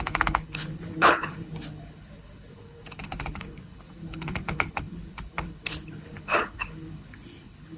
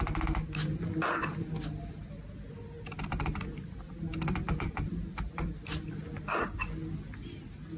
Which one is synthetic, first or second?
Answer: first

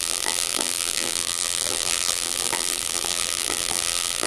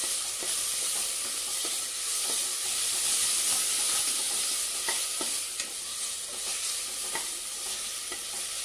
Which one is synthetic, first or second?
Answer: first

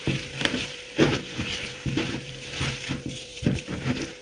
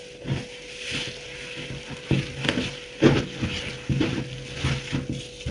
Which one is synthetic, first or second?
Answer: first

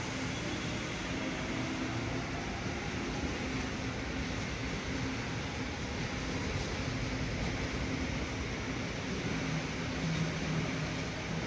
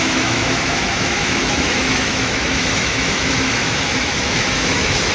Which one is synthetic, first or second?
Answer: second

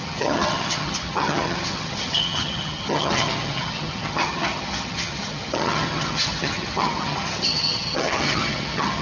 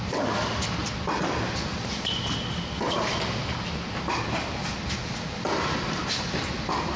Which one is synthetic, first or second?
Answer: first